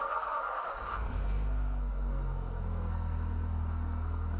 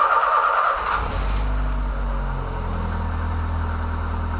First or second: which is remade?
first